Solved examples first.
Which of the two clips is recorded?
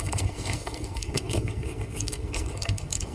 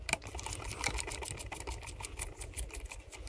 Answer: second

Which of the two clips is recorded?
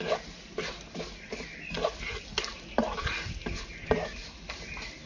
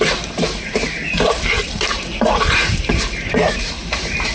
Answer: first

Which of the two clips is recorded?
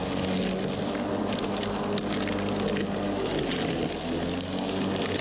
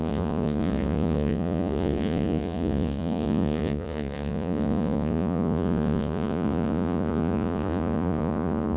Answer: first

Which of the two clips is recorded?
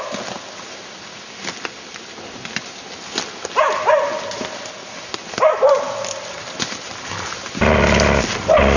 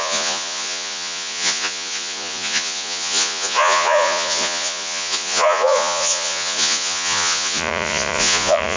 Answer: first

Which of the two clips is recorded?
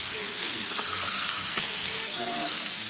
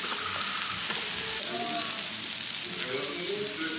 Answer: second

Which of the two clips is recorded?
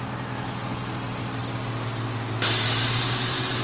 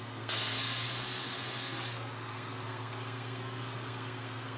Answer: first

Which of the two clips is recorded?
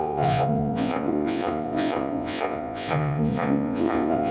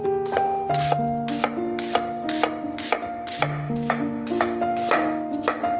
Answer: second